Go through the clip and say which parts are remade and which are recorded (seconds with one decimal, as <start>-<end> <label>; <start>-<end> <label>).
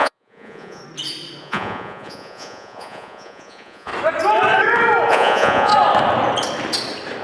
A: 0.0-0.8 remade; 0.8-1.4 recorded; 1.4-3.9 remade; 3.9-5.1 recorded; 5.1-5.7 remade; 5.7-7.2 recorded